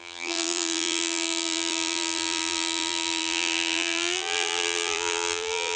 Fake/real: fake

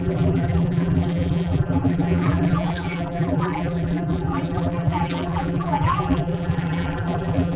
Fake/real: fake